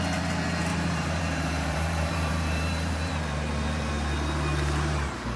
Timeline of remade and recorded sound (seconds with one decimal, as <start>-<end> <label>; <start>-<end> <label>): 0.0-0.7 recorded; 0.7-3.9 remade; 3.9-5.4 recorded